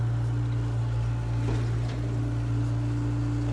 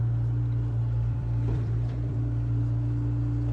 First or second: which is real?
first